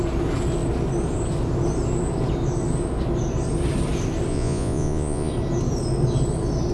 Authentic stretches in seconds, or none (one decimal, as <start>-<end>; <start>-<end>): 0.0-4.3; 5.3-6.7